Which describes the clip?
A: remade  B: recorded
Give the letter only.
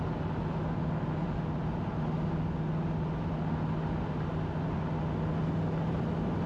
B